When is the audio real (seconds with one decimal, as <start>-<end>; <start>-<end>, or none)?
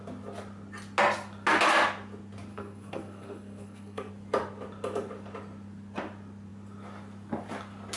0.0-2.5; 4.1-8.0